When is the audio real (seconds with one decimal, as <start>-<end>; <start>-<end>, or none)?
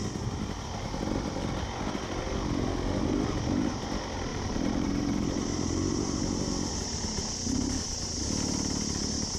0.0-4.3; 6.2-9.4